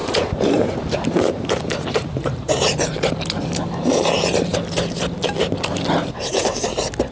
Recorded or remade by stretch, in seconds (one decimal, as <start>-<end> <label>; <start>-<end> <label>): 0.0-3.1 remade; 3.1-7.1 recorded